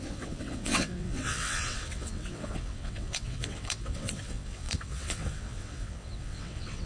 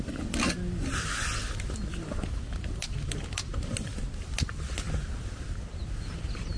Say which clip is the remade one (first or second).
first